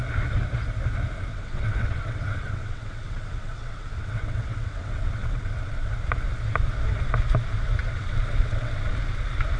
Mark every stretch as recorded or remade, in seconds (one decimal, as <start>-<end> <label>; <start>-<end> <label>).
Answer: 0.0-1.3 recorded; 1.3-5.9 remade; 5.9-7.8 recorded; 7.8-8.9 remade; 8.9-9.6 recorded